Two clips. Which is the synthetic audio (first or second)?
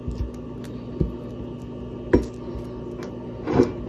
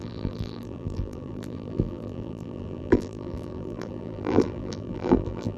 second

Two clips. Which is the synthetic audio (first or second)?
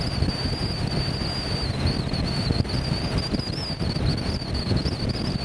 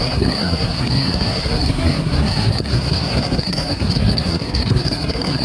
second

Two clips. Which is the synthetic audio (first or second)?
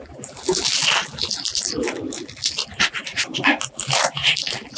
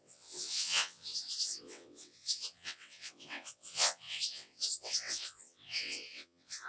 second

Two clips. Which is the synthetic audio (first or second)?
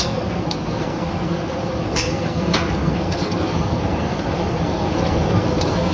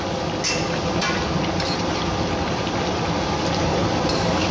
first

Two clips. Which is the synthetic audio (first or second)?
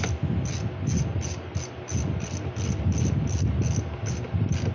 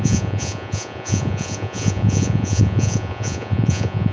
second